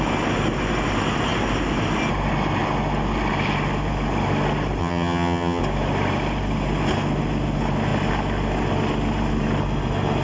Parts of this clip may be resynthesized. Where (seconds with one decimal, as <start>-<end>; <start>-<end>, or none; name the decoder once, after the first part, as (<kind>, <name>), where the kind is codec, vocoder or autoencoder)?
4.8-5.6 (vocoder, HiFi-GAN)